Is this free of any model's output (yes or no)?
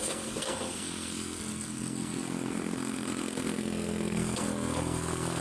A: no